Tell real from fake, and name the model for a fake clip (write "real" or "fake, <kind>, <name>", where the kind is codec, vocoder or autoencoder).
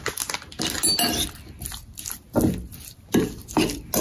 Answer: real